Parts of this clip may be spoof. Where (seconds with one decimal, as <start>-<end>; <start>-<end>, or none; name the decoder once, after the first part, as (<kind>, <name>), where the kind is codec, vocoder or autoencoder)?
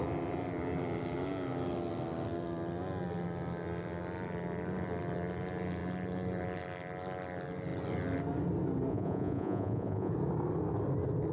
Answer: 8.9-10.1 (vocoder, Vocos)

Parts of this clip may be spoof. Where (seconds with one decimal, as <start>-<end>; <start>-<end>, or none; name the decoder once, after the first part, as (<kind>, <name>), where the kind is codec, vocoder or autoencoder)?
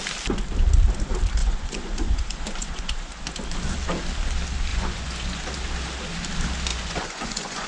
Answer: 1.4-3.2 (vocoder, Vocos); 4.7-5.4; 6.7-7.7